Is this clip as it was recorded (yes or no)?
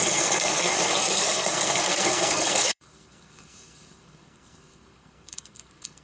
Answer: no